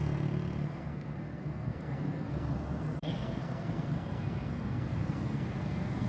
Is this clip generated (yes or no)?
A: yes